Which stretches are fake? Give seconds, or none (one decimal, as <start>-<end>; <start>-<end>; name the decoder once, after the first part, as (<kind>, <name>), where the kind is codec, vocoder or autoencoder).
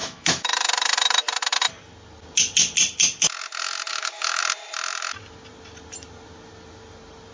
0.0-0.7 (autoencoder, DAC-VAE); 3.9-4.4